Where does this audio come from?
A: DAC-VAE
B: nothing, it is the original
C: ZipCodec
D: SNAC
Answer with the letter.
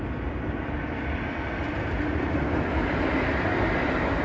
B